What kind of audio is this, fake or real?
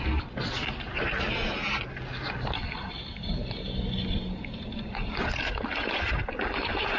real